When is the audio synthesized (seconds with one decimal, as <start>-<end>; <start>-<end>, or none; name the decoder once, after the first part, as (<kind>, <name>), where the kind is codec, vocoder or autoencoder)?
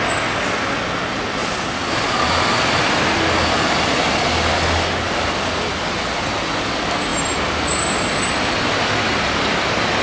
none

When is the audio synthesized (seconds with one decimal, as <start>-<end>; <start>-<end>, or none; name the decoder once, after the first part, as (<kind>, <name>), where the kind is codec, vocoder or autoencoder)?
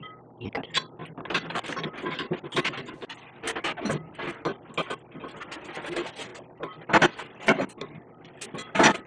none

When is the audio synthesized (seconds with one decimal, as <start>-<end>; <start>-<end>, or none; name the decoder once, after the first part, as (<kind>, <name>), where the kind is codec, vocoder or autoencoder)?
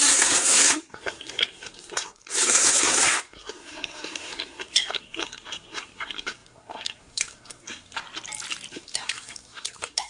0.0-8.0 (codec, SNAC); 8.7-10.1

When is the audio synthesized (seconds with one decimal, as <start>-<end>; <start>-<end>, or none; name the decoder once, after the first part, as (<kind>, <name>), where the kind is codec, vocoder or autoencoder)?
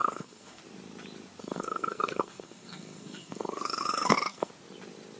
0.0-0.6 (codec, SNAC); 1.4-4.5